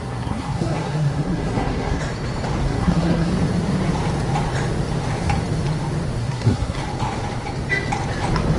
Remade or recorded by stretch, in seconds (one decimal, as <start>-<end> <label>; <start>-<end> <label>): 0.0-2.0 remade; 2.0-2.6 recorded; 2.6-3.3 remade; 3.3-6.2 recorded; 6.2-6.8 remade; 6.8-8.6 recorded